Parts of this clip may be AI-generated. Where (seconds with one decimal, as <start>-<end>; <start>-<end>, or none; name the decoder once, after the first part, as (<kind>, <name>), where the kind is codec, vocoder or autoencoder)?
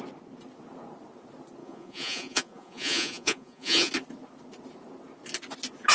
1.6-3.9 (vocoder, Vocos)